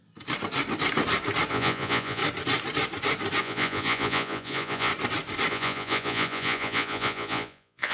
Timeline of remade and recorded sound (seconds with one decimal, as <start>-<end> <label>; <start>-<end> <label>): 0.0-1.5 recorded; 1.5-2.2 remade; 2.2-3.4 recorded; 3.4-4.9 remade; 4.9-5.5 recorded; 5.5-7.9 remade